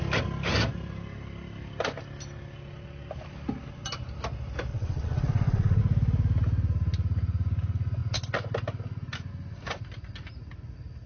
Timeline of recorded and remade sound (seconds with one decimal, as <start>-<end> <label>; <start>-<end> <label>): 0.0-4.7 recorded; 4.7-5.8 remade; 5.8-11.1 recorded